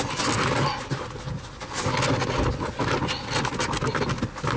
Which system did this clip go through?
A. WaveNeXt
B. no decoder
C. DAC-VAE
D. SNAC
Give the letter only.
B